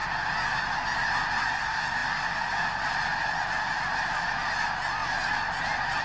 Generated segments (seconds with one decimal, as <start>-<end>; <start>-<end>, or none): none